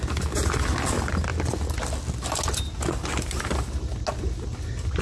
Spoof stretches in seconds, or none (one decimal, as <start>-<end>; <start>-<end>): none